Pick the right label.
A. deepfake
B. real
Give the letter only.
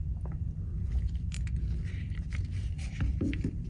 A